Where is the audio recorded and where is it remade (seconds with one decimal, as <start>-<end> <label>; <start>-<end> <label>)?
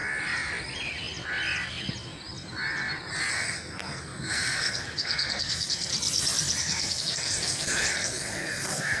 0.0-3.3 recorded; 3.3-5.9 remade; 5.9-6.6 recorded; 6.6-9.0 remade